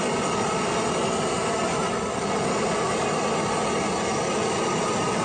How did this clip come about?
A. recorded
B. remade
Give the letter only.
A